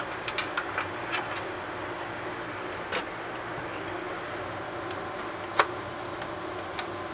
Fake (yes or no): no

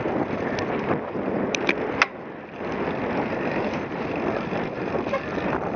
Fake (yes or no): no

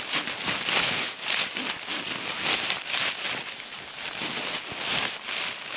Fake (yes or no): no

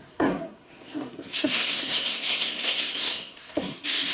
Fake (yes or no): yes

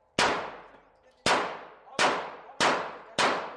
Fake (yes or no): no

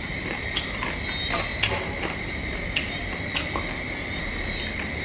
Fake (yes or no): no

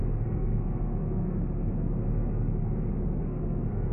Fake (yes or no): yes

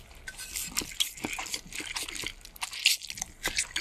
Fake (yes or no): no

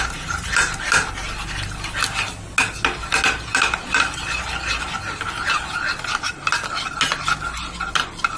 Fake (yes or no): no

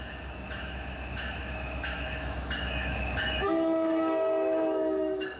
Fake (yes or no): yes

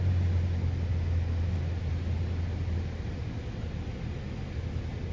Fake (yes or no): no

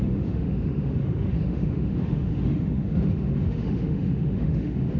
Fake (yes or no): yes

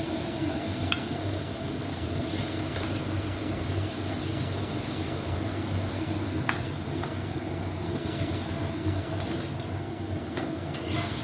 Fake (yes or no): yes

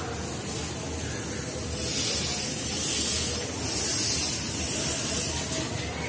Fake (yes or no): no